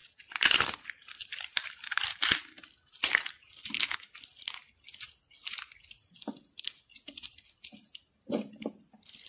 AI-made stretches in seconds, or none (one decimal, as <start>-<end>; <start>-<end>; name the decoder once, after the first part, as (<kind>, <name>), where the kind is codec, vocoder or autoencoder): 0.0-3.3 (vocoder, BigVGAN v2)